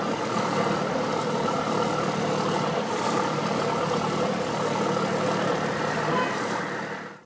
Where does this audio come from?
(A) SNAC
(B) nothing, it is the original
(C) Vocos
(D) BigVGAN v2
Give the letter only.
B